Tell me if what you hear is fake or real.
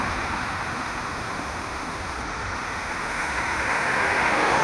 fake